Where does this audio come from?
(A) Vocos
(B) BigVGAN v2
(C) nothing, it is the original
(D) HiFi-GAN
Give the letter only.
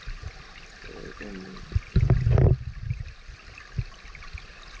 C